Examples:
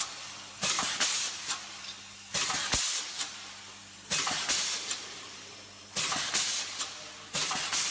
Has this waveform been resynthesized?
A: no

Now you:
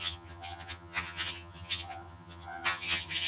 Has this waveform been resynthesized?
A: yes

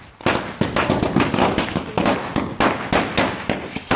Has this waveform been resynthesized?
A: no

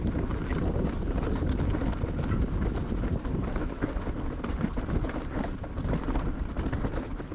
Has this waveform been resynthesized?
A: no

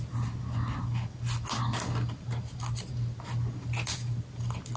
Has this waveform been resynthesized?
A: no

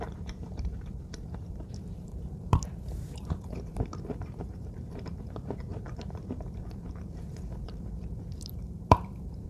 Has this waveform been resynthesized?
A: yes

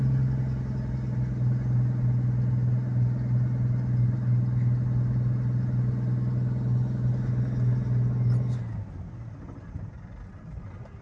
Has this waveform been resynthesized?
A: no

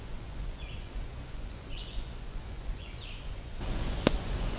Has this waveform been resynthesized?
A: yes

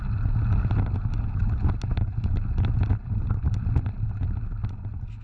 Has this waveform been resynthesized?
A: no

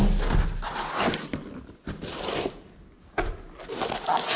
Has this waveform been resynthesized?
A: no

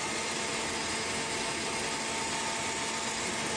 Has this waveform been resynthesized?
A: no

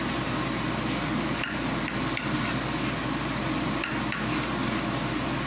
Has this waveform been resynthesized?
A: no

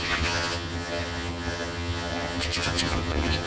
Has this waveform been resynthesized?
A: yes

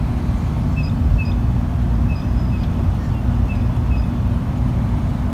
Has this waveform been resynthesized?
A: no